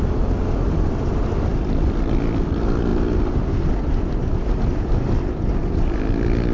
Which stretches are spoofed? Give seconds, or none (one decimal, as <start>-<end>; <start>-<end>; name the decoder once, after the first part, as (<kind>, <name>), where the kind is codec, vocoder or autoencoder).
none